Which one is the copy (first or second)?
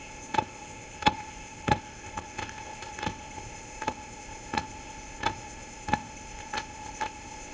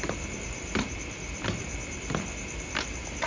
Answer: first